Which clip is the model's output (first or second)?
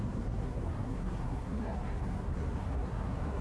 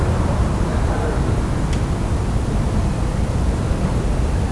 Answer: first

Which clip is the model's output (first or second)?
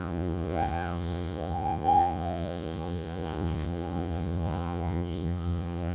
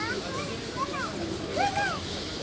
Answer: first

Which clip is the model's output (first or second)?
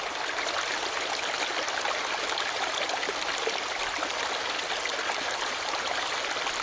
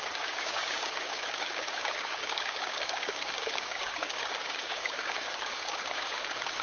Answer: second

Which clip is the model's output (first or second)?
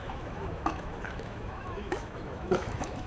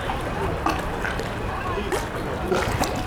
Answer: first